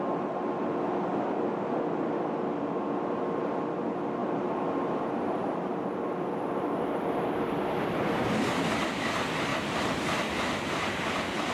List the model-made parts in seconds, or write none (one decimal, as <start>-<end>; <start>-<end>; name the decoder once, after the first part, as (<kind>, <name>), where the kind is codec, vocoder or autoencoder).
4.2-7.5 (vocoder, BigVGAN v2); 9.5-10.2